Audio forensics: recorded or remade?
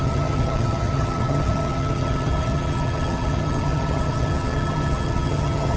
remade